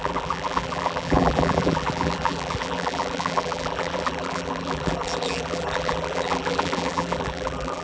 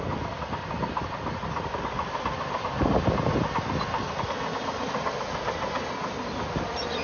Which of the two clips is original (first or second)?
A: second